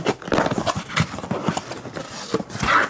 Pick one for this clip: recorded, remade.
recorded